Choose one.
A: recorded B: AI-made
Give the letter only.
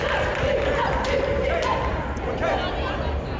A